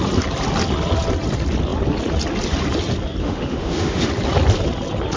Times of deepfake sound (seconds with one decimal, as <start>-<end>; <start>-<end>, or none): 3.2-4.1